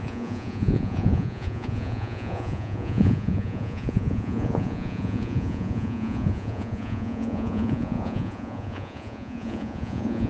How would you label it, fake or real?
fake